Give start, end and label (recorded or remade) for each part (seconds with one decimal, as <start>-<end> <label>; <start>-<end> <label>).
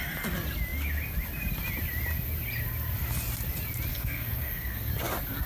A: 0.0-3.9 recorded; 3.9-4.9 remade; 4.9-5.5 recorded